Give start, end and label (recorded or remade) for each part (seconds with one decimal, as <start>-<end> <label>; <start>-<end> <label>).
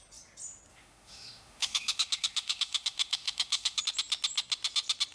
0.0-0.7 recorded; 0.7-3.8 remade; 3.8-5.1 recorded